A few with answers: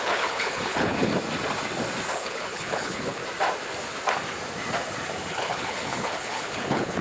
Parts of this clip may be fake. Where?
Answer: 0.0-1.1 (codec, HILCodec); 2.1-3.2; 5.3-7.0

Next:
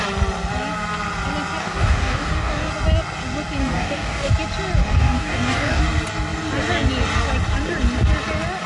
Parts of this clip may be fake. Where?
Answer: 1.6-2.7 (codec, DAC); 3.6-4.3; 4.8-5.8

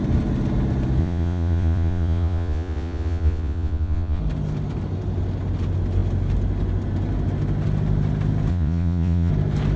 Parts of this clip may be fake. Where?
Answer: 1.0-4.2 (vocoder, Vocos); 8.5-9.3

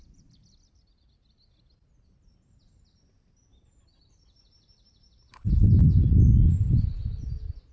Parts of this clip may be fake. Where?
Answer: 3.5-5.8 (vocoder, BigVGAN v2)

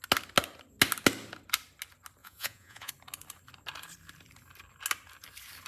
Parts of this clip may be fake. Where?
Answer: 2.2-2.9 (vocoder, Vocos)